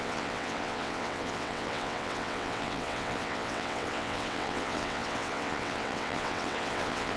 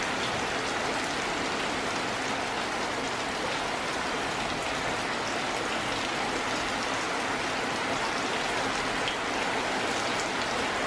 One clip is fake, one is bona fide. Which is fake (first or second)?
first